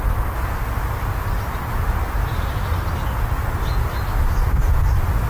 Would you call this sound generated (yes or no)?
no